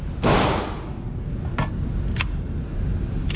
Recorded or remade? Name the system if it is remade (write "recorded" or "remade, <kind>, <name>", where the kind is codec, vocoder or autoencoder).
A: recorded